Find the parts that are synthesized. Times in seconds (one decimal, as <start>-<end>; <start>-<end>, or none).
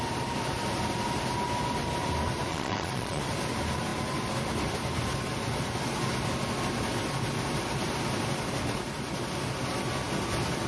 2.5-3.2